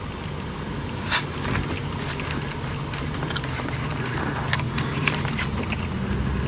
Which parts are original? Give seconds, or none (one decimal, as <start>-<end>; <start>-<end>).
0.0-6.5